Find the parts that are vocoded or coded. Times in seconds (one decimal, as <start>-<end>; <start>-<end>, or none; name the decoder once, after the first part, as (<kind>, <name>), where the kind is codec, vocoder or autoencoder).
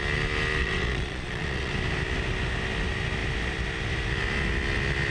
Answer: 0.6-1.7 (vocoder, Vocos)